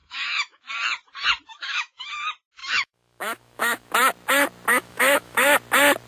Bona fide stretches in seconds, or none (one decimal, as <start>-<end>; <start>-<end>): 0.7-1.5; 2.1-2.6; 3.9-4.7; 5.5-6.1